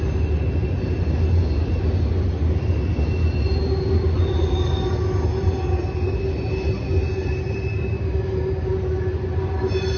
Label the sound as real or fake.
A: real